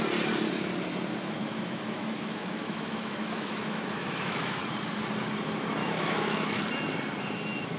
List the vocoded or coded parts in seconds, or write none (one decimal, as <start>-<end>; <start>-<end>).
1.4-4.6; 5.8-6.6